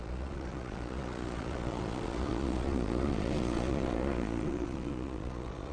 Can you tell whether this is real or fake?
fake